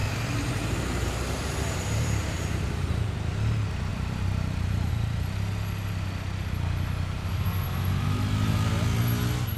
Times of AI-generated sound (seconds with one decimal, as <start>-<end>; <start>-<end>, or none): 0.0-3.0; 3.9-4.9